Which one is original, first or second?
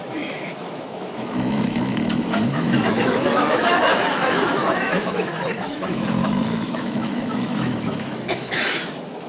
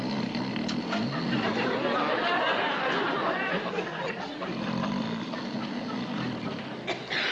second